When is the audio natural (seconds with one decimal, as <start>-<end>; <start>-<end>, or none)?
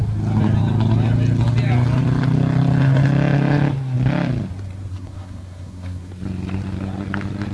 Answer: 0.0-4.9; 6.1-7.5